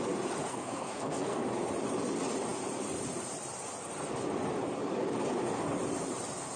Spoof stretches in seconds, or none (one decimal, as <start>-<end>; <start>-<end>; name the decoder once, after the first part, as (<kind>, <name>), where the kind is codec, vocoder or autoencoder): 0.5-1.4 (codec, SNAC)